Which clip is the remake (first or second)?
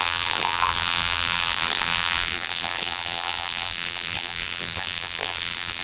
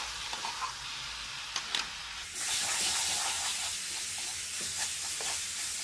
first